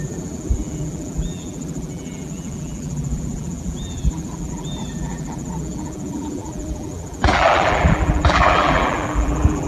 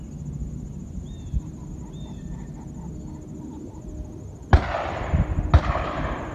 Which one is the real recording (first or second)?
second